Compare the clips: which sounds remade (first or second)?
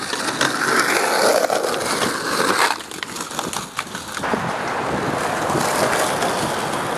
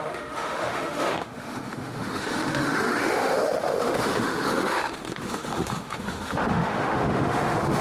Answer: second